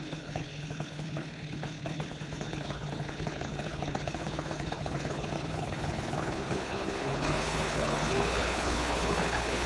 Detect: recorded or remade remade